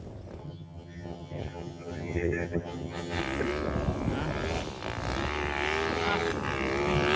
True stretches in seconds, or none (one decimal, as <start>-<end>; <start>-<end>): 0.0-0.4; 3.2-7.2